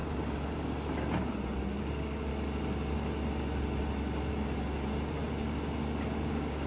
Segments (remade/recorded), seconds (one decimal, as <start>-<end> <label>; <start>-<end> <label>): 0.0-1.8 recorded; 1.8-2.3 remade; 2.3-6.3 recorded; 6.3-6.7 remade